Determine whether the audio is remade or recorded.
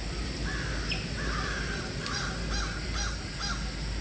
recorded